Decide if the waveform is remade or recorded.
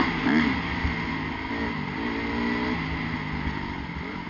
recorded